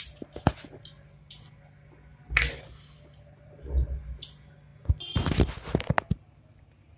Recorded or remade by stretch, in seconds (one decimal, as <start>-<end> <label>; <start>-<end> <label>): 0.0-7.0 recorded